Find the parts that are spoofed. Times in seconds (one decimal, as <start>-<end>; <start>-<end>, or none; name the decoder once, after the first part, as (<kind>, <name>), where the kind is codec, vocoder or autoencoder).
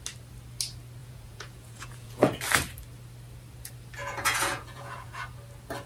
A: 1.0-2.4 (vocoder, Vocos); 4.0-5.1